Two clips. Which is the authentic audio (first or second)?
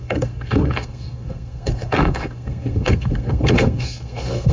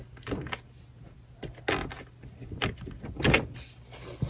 second